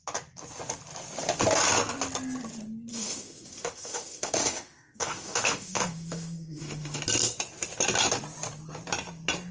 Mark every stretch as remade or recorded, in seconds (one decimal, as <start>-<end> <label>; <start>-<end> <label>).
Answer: 0.0-2.9 recorded; 2.9-7.0 remade; 7.0-9.5 recorded